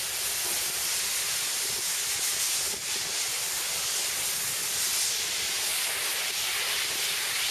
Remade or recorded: recorded